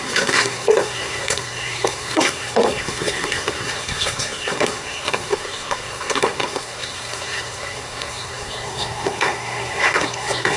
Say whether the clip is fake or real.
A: fake